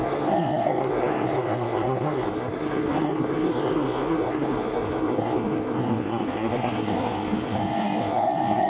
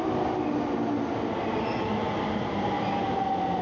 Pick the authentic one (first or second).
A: second